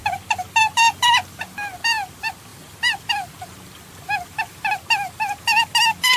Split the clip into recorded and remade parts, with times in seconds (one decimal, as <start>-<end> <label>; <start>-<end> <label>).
0.0-6.2 recorded